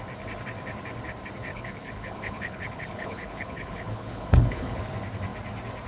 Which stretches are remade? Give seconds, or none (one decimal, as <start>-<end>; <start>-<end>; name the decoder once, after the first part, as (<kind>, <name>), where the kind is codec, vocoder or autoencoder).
1.5-4.8 (codec, HILCodec)